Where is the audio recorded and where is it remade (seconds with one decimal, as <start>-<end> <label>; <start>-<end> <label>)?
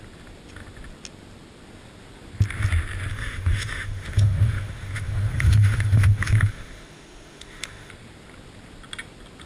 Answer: 0.0-3.1 recorded; 3.1-7.9 remade; 7.9-9.5 recorded